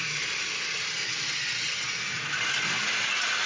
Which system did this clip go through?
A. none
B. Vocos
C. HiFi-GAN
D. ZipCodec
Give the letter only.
A